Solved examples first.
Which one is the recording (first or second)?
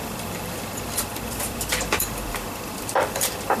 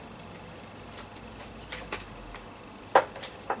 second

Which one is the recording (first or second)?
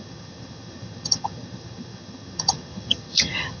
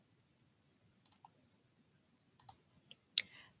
second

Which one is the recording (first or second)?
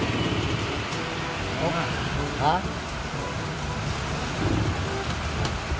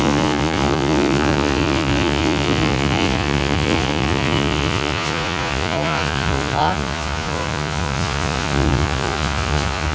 first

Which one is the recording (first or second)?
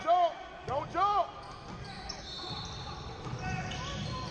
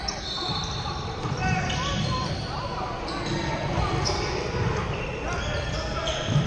first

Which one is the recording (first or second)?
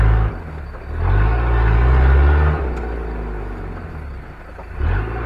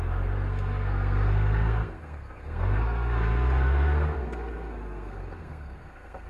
first